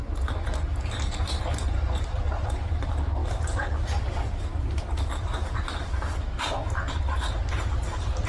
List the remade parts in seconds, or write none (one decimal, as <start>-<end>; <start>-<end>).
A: none